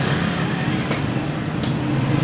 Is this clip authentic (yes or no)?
yes